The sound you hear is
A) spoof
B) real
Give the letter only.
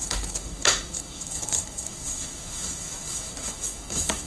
A